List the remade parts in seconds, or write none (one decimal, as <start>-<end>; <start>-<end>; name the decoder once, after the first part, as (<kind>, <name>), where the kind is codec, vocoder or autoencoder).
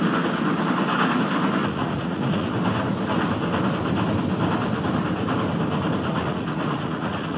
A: 1.6-2.5 (vocoder, Vocos); 6.1-7.4